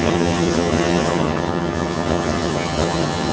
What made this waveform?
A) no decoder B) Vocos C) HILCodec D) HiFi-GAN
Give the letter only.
D